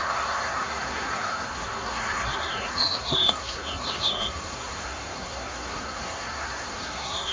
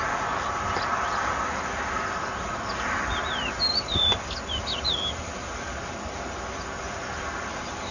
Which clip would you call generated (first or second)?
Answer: first